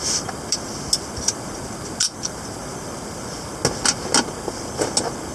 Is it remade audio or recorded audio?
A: recorded